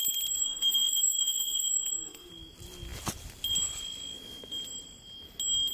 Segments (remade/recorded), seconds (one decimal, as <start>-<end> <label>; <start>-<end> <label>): 0.0-0.4 recorded; 0.4-2.3 remade; 2.3-5.7 recorded